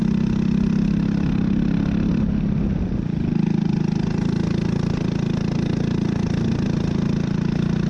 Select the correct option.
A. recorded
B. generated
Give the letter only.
A